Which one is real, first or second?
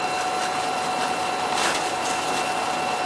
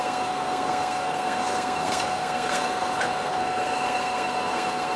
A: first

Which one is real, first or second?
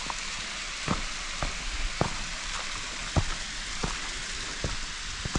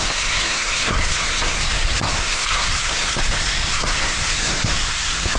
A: first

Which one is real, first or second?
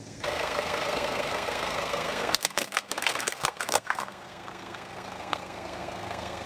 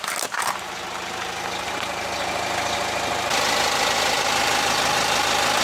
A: second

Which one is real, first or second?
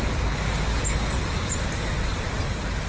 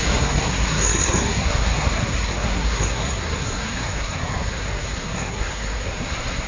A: first